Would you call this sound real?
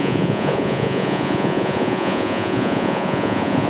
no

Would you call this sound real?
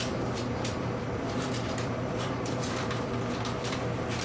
no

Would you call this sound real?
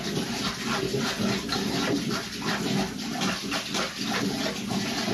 yes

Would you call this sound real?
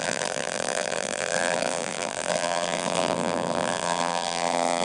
no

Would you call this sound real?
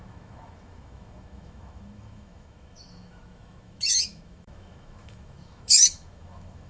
no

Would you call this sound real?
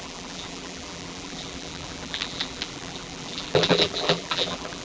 no